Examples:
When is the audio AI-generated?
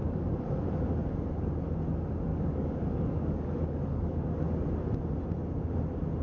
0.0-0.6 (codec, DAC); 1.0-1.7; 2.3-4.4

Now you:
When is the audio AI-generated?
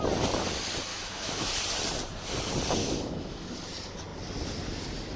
0.9-1.5 (autoencoder, DAC-VAE); 2.8-3.5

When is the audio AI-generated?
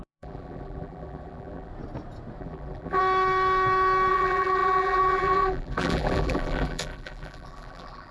0.0-1.7 (vocoder, BigVGAN v2); 2.4-3.0; 4.1-8.1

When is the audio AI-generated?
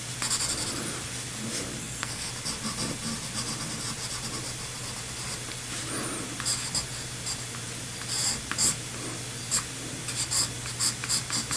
1.8-2.3 (codec, SNAC)